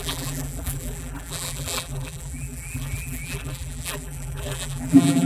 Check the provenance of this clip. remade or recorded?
remade